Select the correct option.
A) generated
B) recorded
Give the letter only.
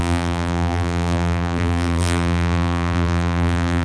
A